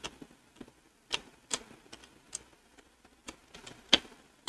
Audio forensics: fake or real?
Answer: real